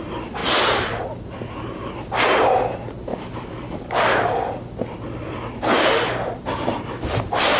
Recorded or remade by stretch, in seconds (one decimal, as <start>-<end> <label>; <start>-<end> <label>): 0.0-3.1 recorded; 3.1-4.2 remade; 4.2-7.6 recorded